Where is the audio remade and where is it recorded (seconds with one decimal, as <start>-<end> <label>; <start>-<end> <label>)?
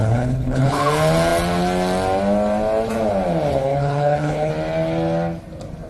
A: 0.0-0.8 remade; 0.8-3.5 recorded; 3.5-4.5 remade; 4.5-5.9 recorded